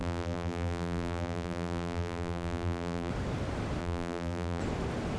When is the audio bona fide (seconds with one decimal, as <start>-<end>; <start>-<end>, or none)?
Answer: 3.1-3.8; 4.6-5.2